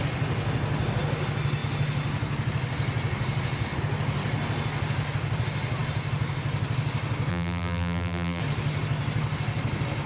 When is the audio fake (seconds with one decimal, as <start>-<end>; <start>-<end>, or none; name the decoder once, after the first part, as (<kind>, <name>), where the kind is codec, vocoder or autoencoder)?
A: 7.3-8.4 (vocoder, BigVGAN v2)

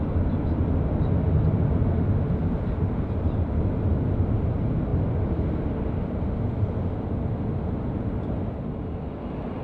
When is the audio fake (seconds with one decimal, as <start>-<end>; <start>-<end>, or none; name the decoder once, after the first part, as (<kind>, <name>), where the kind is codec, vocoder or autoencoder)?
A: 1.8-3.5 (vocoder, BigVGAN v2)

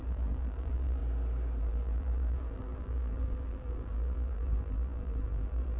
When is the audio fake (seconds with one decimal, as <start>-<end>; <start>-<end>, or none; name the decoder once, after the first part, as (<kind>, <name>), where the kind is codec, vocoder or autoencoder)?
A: 0.0-1.0 (vocoder, BigVGAN v2); 1.6-5.8

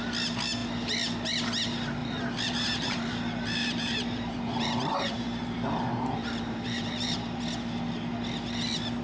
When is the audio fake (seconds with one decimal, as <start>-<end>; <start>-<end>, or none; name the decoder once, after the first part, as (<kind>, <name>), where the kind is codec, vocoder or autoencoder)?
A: 2.0-3.2 (vocoder, BigVGAN v2); 3.6-7.4